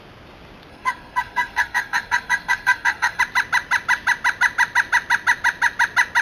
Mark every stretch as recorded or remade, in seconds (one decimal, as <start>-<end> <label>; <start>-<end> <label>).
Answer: 0.0-0.7 recorded; 0.7-3.2 remade; 3.2-6.2 recorded